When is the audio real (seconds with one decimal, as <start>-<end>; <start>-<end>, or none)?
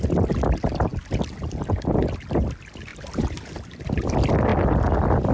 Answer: 0.0-5.3